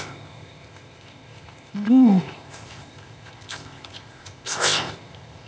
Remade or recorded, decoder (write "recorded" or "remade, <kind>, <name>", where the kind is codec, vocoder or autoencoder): remade, codec, ZipCodec